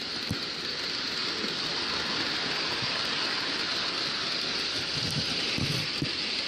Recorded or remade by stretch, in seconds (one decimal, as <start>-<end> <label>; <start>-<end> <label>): 0.0-6.5 recorded